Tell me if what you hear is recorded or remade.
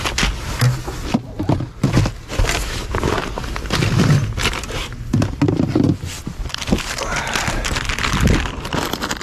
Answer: recorded